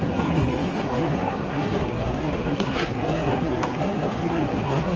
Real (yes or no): no